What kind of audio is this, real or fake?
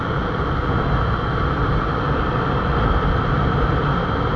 real